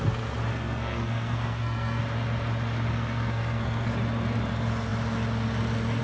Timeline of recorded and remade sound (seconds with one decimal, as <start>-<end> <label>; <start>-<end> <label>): 0.0-0.5 recorded; 0.5-2.0 remade; 2.0-2.9 recorded; 2.9-3.9 remade; 3.9-6.0 recorded